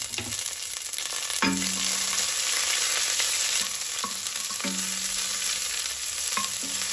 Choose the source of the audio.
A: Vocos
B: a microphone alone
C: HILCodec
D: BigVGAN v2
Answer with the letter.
B